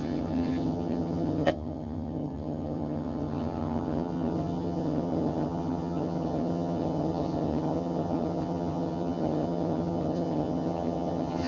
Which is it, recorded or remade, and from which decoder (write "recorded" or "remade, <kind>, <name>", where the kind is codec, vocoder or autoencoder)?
remade, vocoder, HiFi-GAN